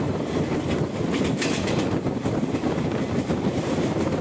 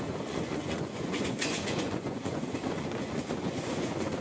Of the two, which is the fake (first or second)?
second